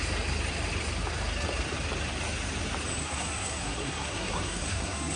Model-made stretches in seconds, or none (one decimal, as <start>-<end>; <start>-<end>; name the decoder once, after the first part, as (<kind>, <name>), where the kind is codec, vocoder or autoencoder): 3.0-5.2 (codec, SNAC)